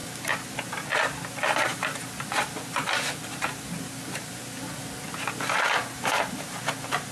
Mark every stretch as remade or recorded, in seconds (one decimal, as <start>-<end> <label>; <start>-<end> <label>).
0.0-7.1 recorded

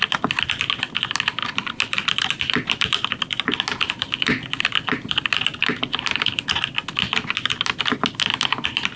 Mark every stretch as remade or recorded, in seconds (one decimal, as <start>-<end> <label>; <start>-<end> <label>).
0.0-9.0 recorded